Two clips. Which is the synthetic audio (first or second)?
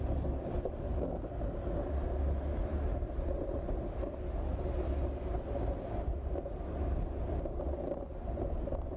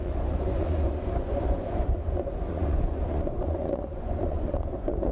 second